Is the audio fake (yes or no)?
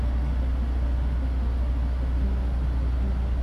no